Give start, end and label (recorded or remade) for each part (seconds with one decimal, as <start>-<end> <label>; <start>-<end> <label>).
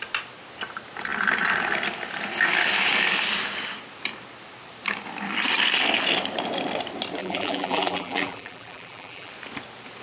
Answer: 0.0-7.2 recorded; 7.2-9.3 remade; 9.3-10.0 recorded